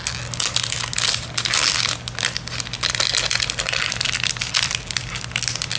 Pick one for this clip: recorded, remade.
recorded